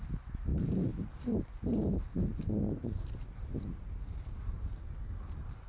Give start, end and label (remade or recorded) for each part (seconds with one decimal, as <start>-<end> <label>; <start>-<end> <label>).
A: 0.0-5.7 recorded